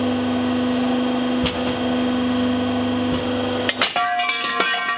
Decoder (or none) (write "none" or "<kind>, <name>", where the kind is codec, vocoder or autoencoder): none